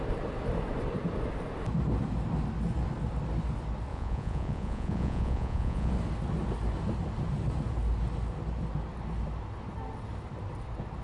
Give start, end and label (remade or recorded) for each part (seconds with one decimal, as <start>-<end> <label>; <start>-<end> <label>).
0.0-3.9 recorded; 3.9-5.9 remade; 5.9-11.0 recorded